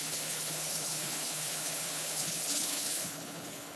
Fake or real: fake